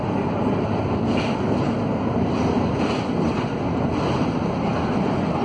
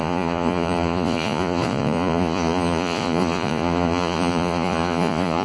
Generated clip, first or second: second